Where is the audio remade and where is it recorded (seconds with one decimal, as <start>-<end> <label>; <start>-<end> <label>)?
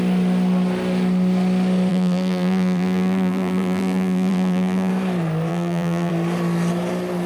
0.0-1.9 recorded; 1.9-4.9 remade; 4.9-5.5 recorded; 5.5-6.1 remade; 6.1-7.3 recorded